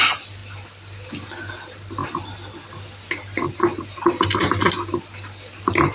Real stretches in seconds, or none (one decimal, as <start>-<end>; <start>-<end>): 0.0-5.9